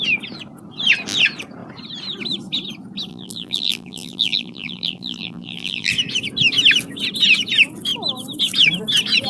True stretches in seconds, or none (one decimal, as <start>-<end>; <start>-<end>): 0.0-3.1; 5.9-9.3